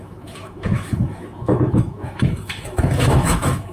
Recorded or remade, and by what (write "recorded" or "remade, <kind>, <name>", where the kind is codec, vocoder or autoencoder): remade, autoencoder, DAC-VAE